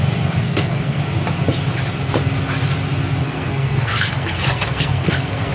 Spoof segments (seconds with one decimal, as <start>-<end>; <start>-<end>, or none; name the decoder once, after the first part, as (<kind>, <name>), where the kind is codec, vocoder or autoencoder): 0.4-1.0 (codec, SNAC); 3.2-5.5

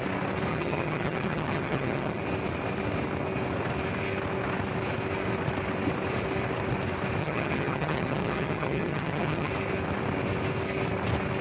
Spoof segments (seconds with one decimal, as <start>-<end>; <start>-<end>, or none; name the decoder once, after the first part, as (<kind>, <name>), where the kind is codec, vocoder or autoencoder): 0.5-2.2 (vocoder, HiFi-GAN); 7.2-9.5

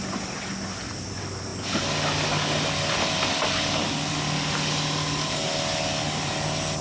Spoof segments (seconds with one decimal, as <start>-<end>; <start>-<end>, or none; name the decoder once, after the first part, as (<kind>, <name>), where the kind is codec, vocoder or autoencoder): none

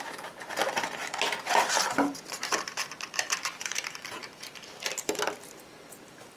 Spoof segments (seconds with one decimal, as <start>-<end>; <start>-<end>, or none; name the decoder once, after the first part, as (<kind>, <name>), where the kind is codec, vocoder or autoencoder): 0.0-0.6 (vocoder, BigVGAN v2); 1.7-6.4

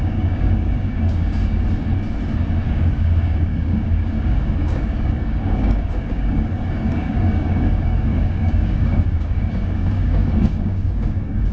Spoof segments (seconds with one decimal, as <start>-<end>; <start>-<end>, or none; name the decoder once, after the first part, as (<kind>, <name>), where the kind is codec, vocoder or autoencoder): 0.0-1.4 (codec, DAC); 2.7-11.5